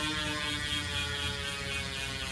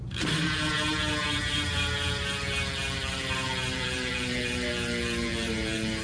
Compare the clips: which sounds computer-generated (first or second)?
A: second